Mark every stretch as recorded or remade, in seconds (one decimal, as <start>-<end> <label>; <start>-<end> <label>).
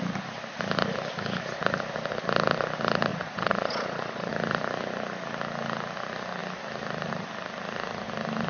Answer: 0.0-3.1 recorded; 3.1-4.3 remade; 4.3-8.5 recorded